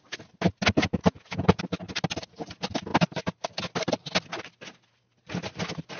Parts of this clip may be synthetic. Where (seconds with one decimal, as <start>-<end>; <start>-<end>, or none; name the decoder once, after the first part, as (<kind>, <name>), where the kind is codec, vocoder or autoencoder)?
1.0-1.6 (vocoder, Vocos)